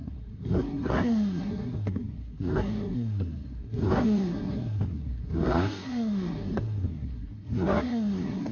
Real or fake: fake